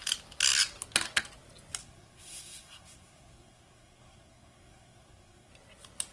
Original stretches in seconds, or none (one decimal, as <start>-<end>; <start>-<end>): 0.0-1.8; 5.5-6.1